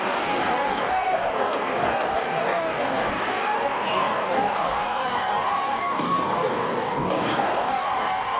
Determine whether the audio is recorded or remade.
remade